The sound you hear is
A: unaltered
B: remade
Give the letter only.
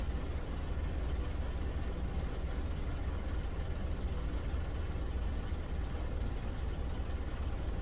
A